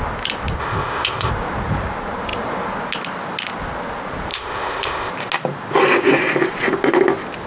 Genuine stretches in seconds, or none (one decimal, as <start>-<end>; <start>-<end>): 0.0-0.6; 1.3-4.3; 5.1-7.5